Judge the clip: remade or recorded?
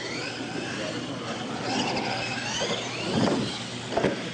recorded